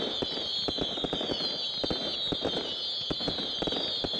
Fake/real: real